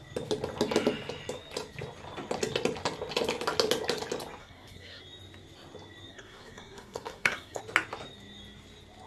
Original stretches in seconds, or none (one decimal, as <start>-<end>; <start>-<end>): 0.0-4.4; 5.0-6.1; 7.6-9.1